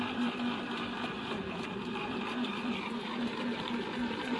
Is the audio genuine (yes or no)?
no